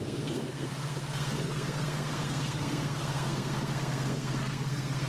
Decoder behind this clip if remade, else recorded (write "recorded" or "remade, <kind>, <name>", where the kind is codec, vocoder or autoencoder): remade, codec, SNAC